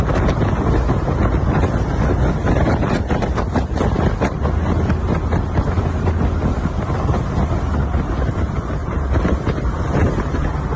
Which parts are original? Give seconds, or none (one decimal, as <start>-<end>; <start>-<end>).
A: 0.0-2.4; 3.4-8.8; 10.4-10.8